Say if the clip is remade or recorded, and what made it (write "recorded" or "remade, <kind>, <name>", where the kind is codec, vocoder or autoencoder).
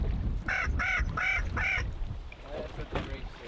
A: remade, vocoder, BigVGAN v2